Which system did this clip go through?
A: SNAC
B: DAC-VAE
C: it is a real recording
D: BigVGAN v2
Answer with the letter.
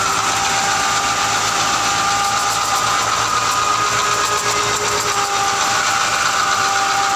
C